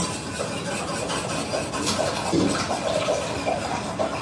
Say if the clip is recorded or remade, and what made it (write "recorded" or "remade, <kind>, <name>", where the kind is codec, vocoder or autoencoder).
recorded